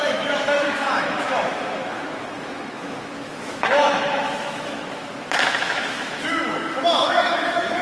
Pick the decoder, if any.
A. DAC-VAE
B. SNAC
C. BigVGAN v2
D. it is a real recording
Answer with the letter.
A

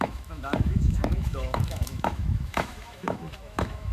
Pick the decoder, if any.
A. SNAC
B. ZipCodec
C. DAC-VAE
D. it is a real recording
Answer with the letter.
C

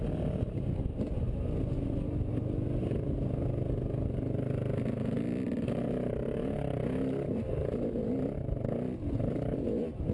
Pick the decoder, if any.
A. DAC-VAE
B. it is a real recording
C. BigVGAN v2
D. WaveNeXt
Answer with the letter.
B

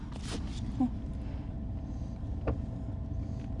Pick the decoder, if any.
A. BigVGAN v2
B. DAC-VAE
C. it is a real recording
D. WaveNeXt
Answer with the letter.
C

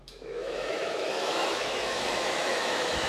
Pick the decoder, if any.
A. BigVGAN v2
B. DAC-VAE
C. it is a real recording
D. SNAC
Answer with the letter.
B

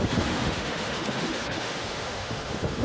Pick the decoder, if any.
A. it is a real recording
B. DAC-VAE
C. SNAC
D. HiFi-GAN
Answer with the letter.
B